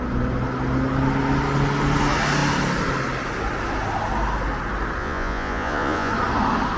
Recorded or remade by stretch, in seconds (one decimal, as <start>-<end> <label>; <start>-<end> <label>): 0.0-5.0 recorded; 5.0-6.1 remade; 6.1-6.8 recorded